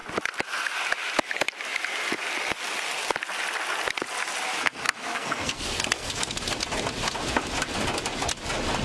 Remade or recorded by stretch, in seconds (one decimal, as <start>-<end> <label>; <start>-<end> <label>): 0.0-4.6 recorded; 4.6-6.4 remade; 6.4-8.8 recorded